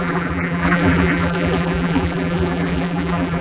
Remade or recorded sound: remade